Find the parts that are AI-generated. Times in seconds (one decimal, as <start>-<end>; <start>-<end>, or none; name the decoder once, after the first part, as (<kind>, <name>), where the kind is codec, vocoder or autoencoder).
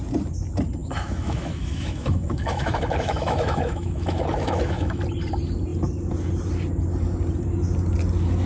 0.8-5.0 (autoencoder, DAC-VAE)